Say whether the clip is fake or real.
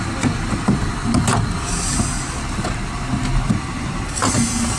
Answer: real